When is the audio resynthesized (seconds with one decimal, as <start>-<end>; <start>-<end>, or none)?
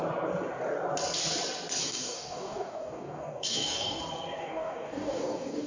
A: 1.8-4.0; 4.4-5.7